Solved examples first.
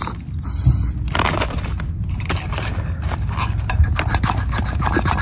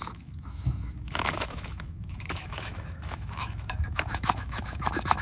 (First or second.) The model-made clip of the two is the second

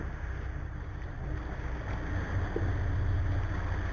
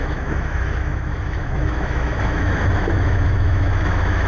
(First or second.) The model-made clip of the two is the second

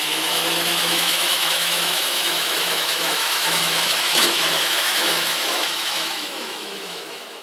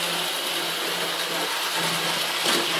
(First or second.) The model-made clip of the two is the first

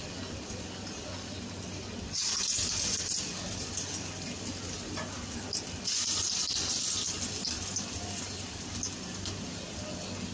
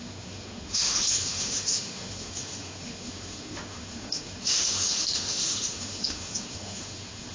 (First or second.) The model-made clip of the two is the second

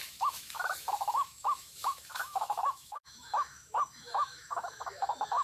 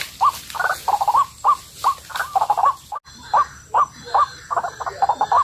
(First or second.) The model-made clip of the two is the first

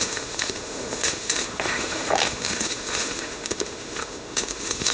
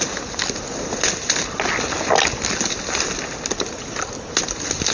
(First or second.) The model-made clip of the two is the first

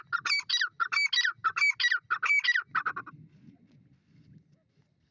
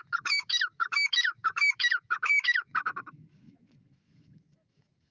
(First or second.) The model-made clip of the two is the second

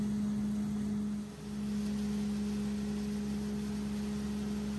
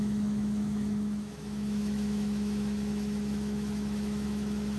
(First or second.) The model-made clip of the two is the second